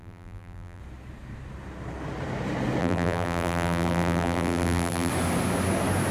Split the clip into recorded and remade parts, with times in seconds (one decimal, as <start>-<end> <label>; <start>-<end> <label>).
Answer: 0.0-0.8 remade; 0.8-2.8 recorded; 2.8-5.1 remade; 5.1-6.1 recorded